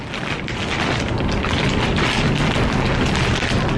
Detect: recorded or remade recorded